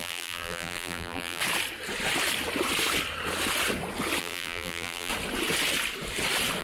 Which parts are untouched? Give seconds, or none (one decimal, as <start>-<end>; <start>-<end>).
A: 1.4-4.2; 5.1-6.6